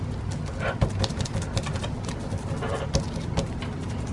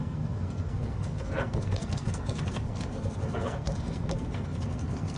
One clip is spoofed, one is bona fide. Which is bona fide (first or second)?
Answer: first